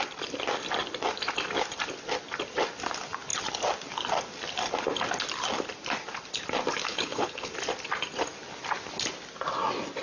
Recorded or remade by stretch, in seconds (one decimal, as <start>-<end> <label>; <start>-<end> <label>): 0.0-6.9 recorded; 6.9-7.5 remade; 7.5-10.0 recorded